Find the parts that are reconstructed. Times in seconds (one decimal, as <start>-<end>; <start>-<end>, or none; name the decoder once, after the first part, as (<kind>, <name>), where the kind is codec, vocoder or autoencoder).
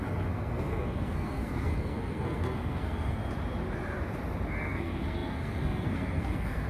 0.0-3.2 (codec, SNAC); 4.6-6.7